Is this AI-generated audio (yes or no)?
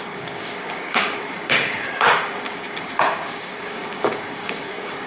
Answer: yes